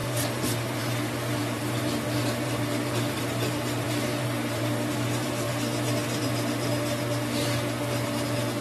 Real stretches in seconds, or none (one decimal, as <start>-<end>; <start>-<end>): 0.8-1.4; 5.5-8.6